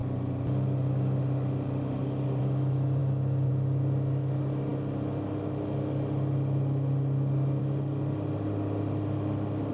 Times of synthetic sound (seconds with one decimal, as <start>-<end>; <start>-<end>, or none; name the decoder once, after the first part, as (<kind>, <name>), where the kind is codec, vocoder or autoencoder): none